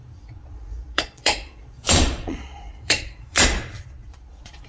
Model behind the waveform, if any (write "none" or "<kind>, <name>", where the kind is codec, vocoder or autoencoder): vocoder, Vocos